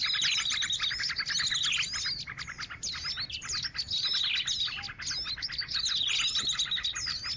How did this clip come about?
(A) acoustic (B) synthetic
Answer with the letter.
A